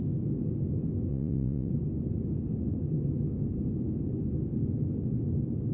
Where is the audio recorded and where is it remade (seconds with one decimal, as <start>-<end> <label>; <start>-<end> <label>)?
0.0-1.1 recorded; 1.1-1.7 remade; 1.7-5.7 recorded